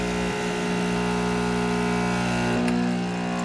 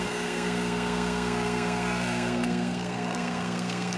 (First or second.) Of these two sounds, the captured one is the first